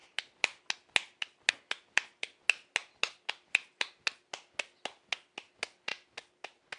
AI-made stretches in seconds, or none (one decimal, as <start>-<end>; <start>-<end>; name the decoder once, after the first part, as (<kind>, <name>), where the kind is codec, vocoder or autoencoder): none